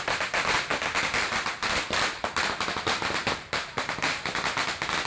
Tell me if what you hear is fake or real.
real